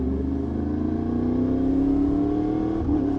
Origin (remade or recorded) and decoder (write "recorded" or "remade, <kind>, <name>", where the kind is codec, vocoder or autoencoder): recorded